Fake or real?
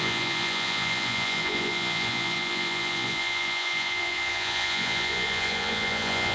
fake